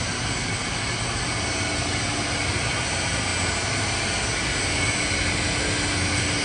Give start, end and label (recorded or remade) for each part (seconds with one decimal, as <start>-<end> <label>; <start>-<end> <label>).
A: 0.0-6.4 recorded